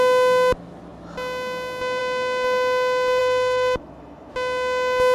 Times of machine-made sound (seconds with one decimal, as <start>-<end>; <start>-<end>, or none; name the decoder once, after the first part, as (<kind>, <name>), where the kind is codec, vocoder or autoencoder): 3.2-4.3 (autoencoder, DAC-VAE)